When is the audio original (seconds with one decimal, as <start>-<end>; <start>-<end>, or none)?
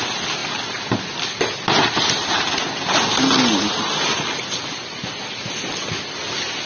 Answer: 0.0-6.7